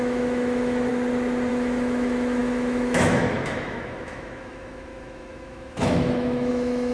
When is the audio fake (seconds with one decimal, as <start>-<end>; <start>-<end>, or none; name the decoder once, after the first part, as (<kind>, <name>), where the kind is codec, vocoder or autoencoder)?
0.0-0.9 (autoencoder, DAC-VAE); 1.5-6.9